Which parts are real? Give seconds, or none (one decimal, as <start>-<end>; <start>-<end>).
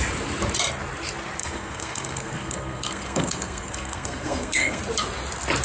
0.0-1.4; 4.8-5.6